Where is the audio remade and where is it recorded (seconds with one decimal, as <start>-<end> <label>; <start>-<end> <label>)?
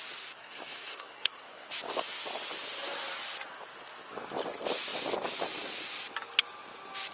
0.0-0.4 recorded; 0.4-1.7 remade; 1.7-7.1 recorded